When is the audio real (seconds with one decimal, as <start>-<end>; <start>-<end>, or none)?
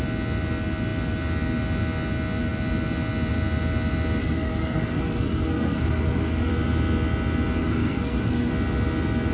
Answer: 0.0-4.2; 6.5-7.6; 8.5-9.3